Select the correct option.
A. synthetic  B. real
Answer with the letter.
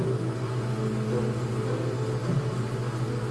B